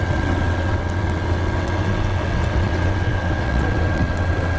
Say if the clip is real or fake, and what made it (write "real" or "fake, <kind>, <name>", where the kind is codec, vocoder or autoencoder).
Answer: fake, vocoder, WaveNeXt